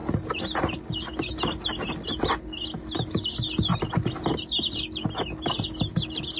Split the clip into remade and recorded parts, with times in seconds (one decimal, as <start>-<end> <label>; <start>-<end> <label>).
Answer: 0.0-6.4 recorded